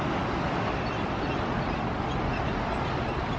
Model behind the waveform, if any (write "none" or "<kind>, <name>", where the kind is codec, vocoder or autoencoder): none